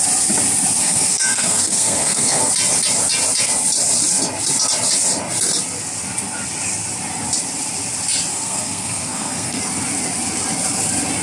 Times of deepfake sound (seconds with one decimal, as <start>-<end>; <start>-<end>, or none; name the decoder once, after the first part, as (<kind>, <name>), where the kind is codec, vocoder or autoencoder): 0.8-2.5 (codec, SNAC); 8.3-9.6